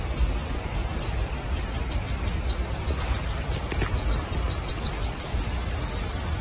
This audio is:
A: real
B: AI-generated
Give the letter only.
A